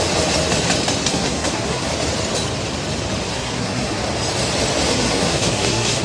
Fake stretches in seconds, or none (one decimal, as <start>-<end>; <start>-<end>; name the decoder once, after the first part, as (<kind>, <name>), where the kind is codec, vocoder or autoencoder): 1.1-1.9 (codec, SNAC); 3.3-4.0; 4.9-6.0